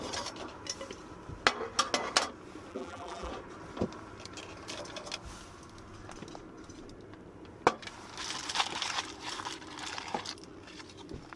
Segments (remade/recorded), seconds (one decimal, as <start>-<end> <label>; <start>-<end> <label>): 0.0-2.7 recorded; 2.7-3.3 remade; 3.3-11.4 recorded